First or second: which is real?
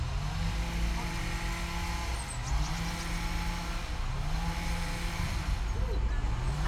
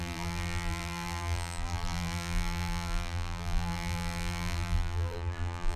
first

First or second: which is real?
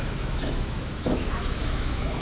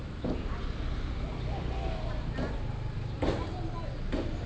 second